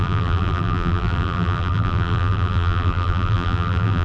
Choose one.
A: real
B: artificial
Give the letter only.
B